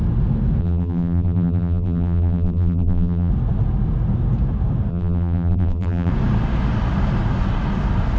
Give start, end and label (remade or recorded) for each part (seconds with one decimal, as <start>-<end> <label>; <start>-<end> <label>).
0.0-0.6 recorded; 0.6-3.3 remade; 3.3-4.9 recorded; 4.9-6.1 remade; 6.1-8.2 recorded